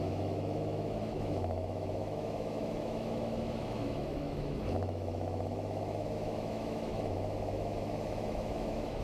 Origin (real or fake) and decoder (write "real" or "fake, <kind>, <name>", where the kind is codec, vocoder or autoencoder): fake, autoencoder, DAC-VAE